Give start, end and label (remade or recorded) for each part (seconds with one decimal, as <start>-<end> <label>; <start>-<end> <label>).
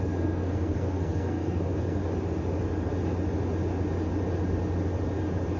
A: 0.0-2.0 remade; 2.0-5.6 recorded